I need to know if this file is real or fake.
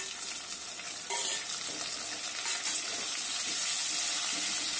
real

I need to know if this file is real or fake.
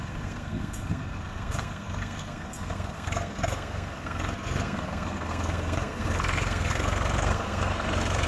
fake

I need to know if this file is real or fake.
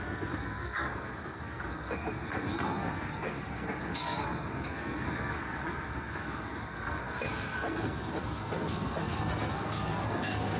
fake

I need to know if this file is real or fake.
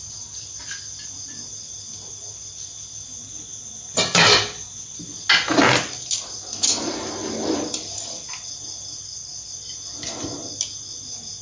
real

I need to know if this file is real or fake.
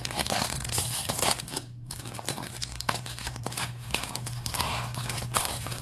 fake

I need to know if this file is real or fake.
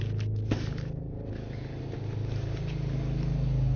real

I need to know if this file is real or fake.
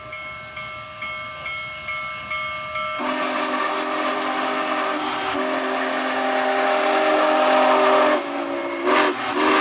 real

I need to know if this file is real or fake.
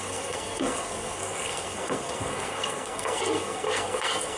fake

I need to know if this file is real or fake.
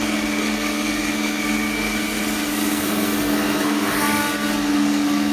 fake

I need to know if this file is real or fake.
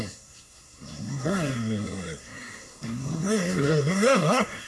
fake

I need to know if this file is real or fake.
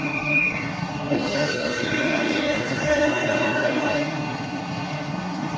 fake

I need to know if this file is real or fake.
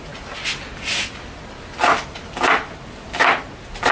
real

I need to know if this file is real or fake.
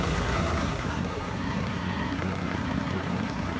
fake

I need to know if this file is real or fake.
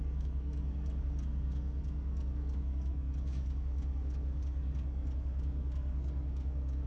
fake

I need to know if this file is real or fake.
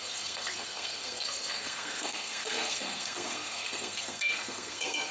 fake